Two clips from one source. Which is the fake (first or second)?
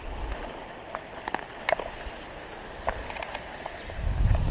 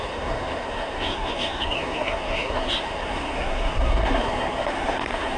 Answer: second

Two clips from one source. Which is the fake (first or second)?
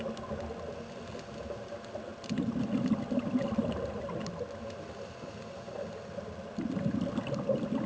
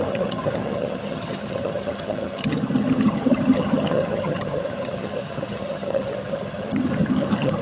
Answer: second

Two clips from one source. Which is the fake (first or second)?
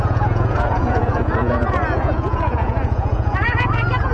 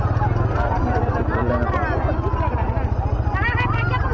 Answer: first